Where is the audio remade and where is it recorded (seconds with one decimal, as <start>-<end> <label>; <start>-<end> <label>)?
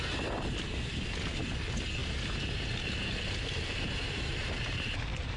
0.0-5.4 recorded